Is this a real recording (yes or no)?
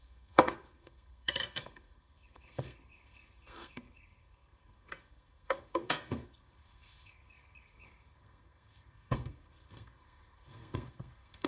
no